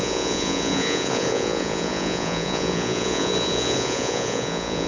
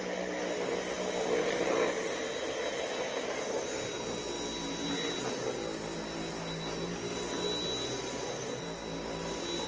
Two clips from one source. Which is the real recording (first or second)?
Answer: second